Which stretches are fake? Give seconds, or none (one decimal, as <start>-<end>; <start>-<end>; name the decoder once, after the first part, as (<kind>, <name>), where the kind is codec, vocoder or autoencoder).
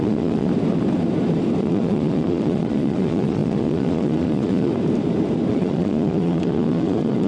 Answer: 0.0-0.5 (vocoder, Vocos); 1.6-4.7; 5.5-7.3